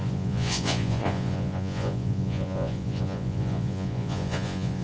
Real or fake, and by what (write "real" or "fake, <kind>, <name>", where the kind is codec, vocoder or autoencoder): fake, vocoder, Vocos